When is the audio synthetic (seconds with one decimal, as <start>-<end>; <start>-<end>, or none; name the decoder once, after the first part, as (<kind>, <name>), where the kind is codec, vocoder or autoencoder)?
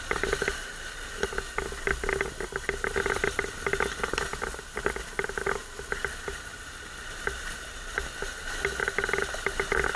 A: none